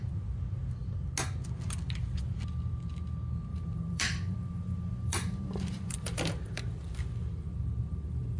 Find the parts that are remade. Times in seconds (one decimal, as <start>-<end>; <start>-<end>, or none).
3.5-8.4